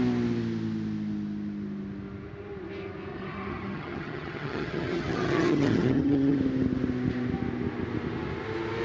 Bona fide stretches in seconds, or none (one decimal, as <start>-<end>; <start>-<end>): 0.0-3.1; 6.4-8.8